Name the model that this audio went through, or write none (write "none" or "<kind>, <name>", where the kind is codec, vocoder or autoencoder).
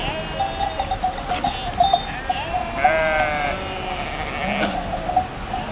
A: none